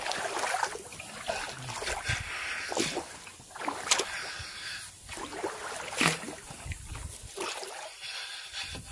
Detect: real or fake real